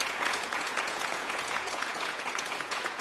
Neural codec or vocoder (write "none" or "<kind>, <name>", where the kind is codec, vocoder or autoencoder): vocoder, Vocos